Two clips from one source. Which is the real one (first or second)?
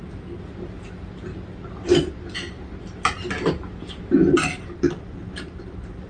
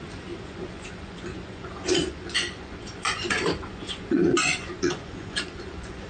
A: first